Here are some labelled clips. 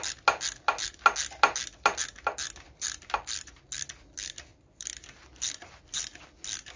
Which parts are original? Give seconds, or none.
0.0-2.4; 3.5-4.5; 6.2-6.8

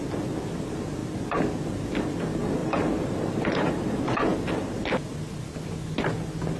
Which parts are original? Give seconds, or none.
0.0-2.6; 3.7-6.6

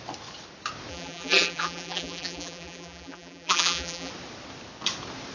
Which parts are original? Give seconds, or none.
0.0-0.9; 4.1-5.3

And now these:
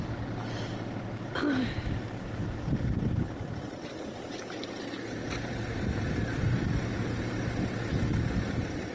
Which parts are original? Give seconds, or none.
0.0-5.2; 6.8-8.9

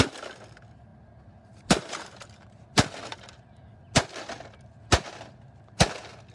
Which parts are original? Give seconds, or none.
0.0-0.9; 2.7-6.3

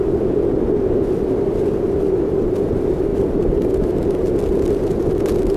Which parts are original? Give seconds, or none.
0.0-3.1; 3.6-5.6

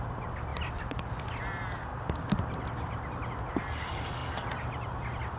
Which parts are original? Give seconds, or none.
0.0-0.5; 1.2-1.9; 2.7-4.2

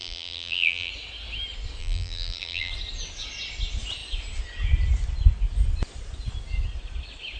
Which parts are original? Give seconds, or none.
0.9-1.8; 2.7-7.4